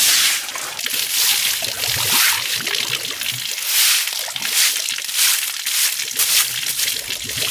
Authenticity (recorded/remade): recorded